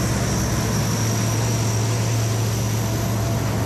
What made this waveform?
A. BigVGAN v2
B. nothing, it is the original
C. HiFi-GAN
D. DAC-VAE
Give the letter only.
B